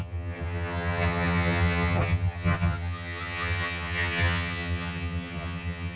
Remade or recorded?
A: remade